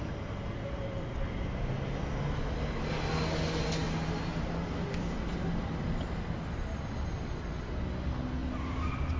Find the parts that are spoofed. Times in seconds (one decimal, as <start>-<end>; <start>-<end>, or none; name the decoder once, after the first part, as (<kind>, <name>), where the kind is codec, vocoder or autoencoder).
none